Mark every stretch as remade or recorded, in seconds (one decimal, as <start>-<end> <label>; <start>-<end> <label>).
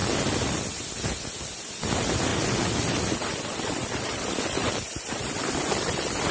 0.0-6.3 recorded